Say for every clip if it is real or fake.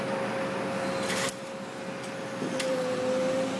fake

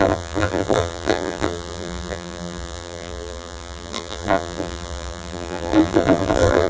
fake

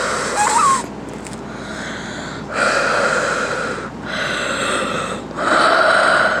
real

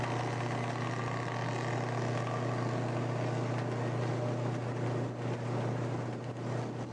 real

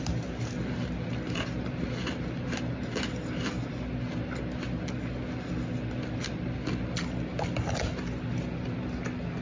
real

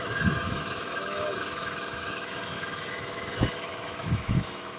fake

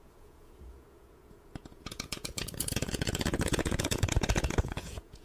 fake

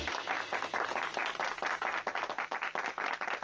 real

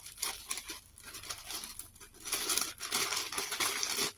real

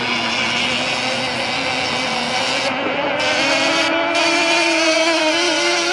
real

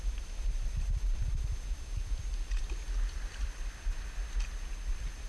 real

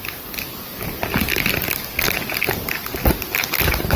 real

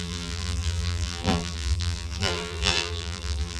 fake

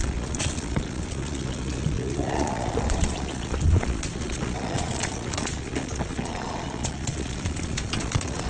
fake